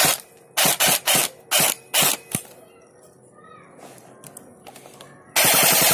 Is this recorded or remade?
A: recorded